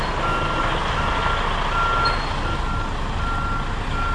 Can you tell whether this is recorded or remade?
recorded